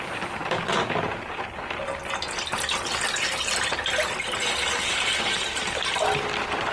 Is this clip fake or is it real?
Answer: real